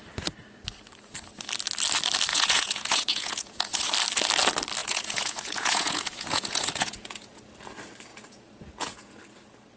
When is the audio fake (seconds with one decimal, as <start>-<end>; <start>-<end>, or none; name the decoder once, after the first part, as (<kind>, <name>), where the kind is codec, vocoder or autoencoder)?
2.3-3.9 (vocoder, Vocos); 4.8-7.4; 8.1-9.1